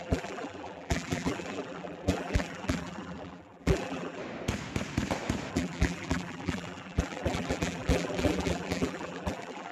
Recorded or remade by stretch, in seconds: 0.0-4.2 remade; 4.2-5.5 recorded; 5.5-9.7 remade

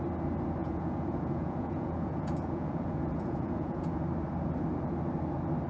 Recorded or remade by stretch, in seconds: 0.0-0.6 recorded; 0.6-4.0 remade; 4.0-5.7 recorded

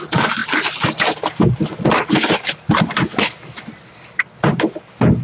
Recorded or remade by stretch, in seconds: 0.0-5.2 recorded

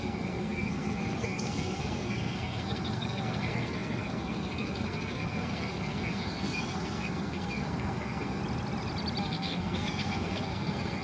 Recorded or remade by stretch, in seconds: 0.0-8.4 remade; 8.4-9.2 recorded; 9.2-11.0 remade

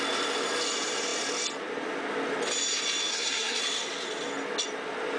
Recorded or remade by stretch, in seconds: 0.0-3.1 recorded; 3.1-3.6 remade; 3.6-5.2 recorded

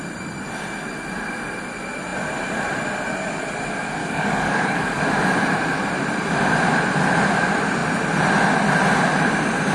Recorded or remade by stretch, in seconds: 0.0-4.0 recorded; 4.0-5.0 remade; 5.0-9.7 recorded

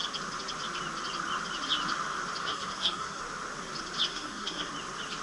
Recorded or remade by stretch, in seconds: 0.0-2.4 recorded; 2.4-3.2 remade; 3.2-4.1 recorded; 4.1-4.7 remade; 4.7-5.2 recorded